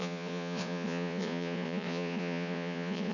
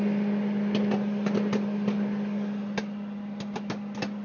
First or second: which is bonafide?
second